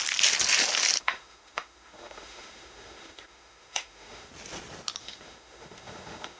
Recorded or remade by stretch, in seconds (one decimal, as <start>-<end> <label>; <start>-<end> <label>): 0.0-1.0 recorded; 1.0-4.3 remade; 4.3-5.0 recorded; 5.0-6.4 remade

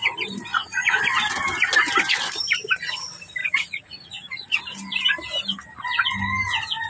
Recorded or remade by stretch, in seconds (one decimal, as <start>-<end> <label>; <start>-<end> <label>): 0.0-0.5 recorded; 0.5-1.0 remade; 1.0-3.4 recorded; 3.4-4.6 remade; 4.6-6.9 recorded

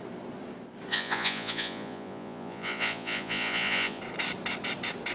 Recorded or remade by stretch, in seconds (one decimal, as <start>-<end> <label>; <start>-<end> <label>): 0.0-0.9 recorded; 0.9-4.0 remade; 4.0-5.1 recorded

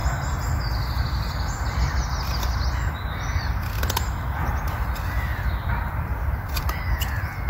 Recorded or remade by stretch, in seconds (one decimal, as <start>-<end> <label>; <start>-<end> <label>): 0.0-5.3 recorded; 5.3-6.8 remade; 6.8-7.5 recorded

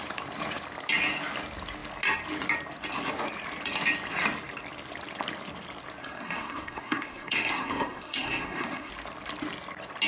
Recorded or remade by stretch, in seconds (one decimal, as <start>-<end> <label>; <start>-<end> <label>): 0.0-6.0 recorded; 6.0-8.9 remade; 8.9-10.1 recorded

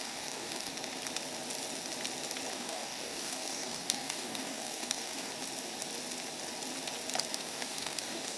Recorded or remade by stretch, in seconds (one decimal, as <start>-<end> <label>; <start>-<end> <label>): 0.0-0.7 remade; 0.7-2.5 recorded; 2.5-5.3 remade; 5.3-7.3 recorded; 7.3-8.4 remade

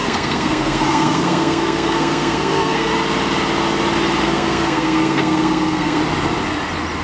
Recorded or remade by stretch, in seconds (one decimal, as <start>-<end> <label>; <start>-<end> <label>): 0.0-2.9 remade; 2.9-4.2 recorded; 4.2-6.0 remade; 6.0-7.0 recorded